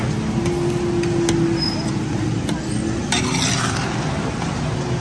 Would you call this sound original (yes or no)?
yes